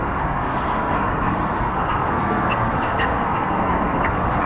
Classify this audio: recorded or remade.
remade